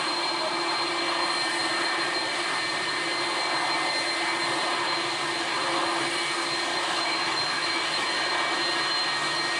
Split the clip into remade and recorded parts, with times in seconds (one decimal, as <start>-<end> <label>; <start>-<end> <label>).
0.0-6.7 recorded; 6.7-8.1 remade; 8.1-9.6 recorded